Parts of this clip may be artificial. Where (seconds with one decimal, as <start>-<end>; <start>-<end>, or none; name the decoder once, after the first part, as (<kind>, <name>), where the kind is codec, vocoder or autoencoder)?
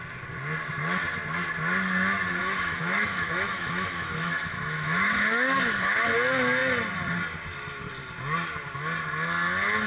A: 2.4-6.1 (autoencoder, DAC-VAE)